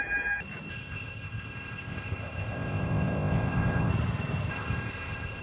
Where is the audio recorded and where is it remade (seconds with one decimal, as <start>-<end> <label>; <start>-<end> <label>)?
0.0-0.7 recorded; 0.7-3.9 remade; 3.9-4.5 recorded; 4.5-5.4 remade